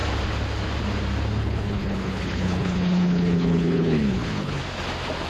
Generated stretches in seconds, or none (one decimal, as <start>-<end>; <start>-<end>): 1.4-4.6